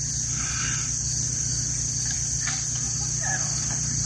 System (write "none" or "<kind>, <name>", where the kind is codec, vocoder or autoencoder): none